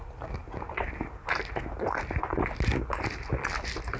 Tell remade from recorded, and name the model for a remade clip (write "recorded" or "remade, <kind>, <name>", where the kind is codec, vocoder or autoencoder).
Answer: recorded